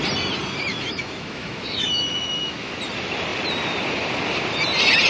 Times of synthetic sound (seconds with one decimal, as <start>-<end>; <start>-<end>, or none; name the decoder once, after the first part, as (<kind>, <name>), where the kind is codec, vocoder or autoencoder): 0.7-2.7 (autoencoder, DAC-VAE)